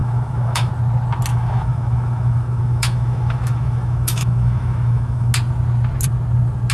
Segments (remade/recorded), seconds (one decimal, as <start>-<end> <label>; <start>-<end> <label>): 0.0-0.7 remade; 0.7-1.3 recorded; 1.3-5.3 remade; 5.3-6.7 recorded